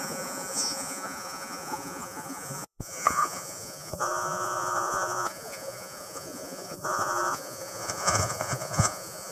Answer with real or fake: fake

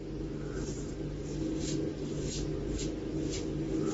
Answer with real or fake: real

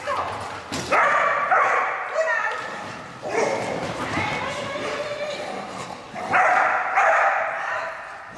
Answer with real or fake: real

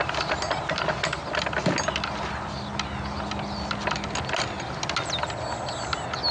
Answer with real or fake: real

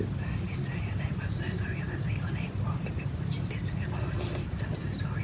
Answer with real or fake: real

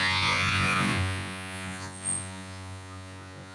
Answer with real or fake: fake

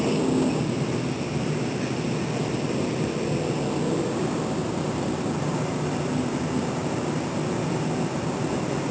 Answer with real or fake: real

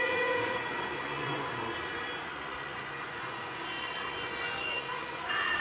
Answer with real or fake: fake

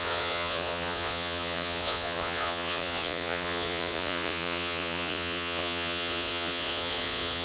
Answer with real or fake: fake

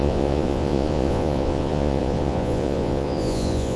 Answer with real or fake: fake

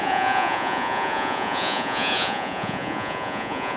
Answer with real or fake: fake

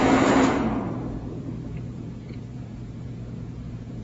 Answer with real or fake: fake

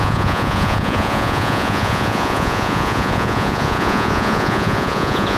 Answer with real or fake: fake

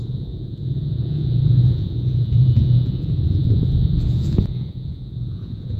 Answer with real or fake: fake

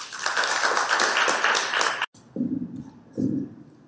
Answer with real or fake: real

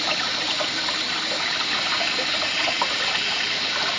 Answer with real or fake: real